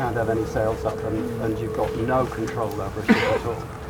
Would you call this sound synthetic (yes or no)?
no